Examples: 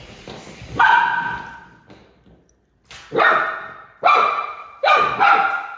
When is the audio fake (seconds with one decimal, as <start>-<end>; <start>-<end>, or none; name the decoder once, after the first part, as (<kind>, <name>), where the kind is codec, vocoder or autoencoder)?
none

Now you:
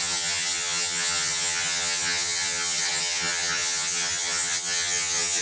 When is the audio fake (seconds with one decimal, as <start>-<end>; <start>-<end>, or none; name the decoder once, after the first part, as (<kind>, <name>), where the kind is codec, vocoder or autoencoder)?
0.0-5.4 (vocoder, HiFi-GAN)

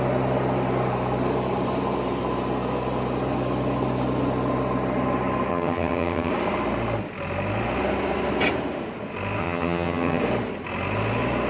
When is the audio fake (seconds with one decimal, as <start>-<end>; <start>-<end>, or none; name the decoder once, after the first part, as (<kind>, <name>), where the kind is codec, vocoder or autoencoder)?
5.5-6.3 (vocoder, HiFi-GAN); 9.4-10.2